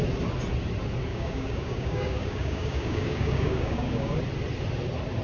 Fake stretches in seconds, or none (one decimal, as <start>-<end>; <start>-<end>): 1.1-4.2